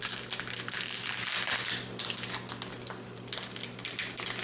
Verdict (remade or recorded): recorded